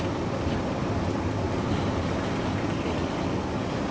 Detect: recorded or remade recorded